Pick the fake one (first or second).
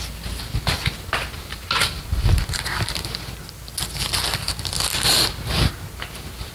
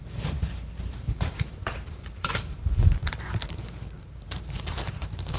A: second